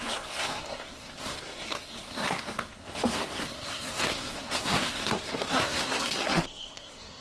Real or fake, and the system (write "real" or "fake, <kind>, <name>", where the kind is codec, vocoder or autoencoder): fake, codec, SNAC